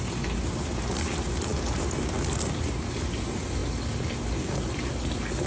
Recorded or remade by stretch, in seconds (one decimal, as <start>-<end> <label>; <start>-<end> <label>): 0.0-5.5 recorded

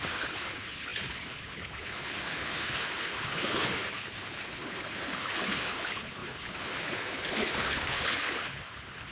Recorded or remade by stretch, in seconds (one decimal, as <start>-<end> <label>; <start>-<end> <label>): 0.0-9.1 remade